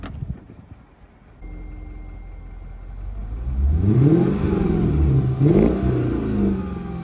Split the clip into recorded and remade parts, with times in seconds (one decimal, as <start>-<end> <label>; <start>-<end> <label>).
0.0-3.2 recorded; 3.2-5.5 remade; 5.5-7.0 recorded